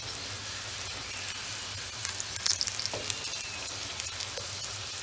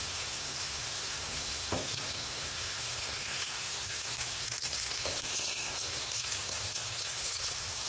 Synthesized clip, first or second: second